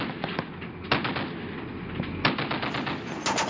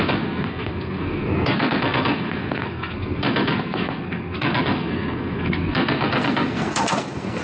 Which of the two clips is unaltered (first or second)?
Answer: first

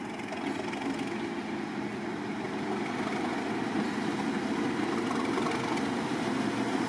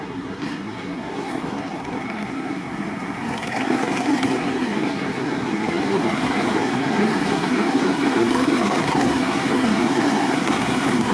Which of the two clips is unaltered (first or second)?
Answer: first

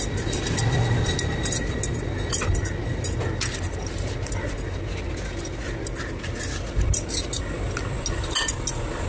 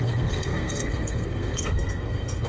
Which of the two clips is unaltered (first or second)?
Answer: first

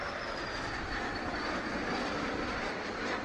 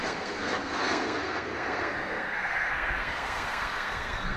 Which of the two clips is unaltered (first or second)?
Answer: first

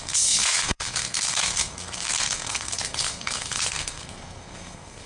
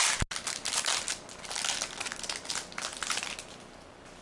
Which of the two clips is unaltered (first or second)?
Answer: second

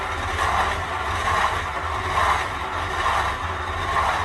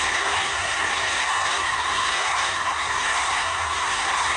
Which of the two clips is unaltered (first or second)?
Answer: first